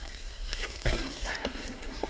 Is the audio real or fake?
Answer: fake